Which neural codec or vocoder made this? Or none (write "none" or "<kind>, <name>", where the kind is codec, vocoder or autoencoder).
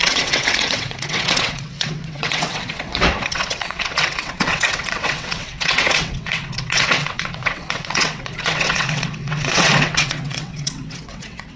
vocoder, WaveNeXt